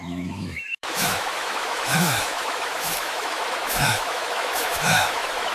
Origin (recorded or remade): remade